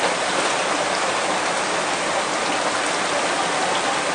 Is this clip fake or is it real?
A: real